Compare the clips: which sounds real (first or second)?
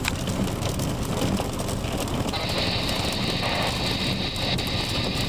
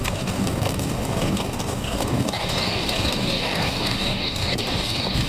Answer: first